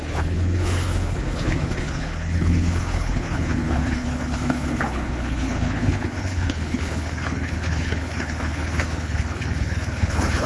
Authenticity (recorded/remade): remade